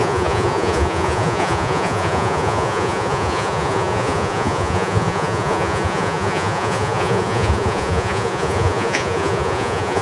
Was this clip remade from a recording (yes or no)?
yes